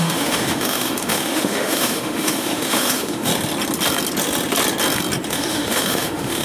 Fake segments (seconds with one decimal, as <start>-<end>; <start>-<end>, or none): 0.0-3.3; 5.3-6.4